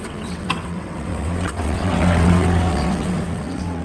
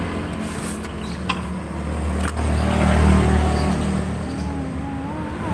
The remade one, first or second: first